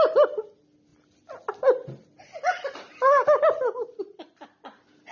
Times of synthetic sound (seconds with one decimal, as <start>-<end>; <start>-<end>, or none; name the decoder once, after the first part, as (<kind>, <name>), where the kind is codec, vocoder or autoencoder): none